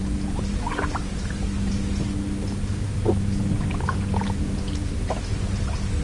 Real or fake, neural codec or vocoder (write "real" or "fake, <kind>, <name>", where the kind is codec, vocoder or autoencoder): real